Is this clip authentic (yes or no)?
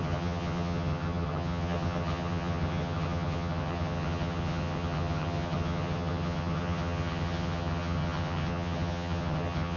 no